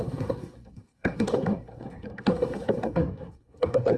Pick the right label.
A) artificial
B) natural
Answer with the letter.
A